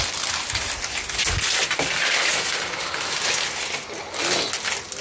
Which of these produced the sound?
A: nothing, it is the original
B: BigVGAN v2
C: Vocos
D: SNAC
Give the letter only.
A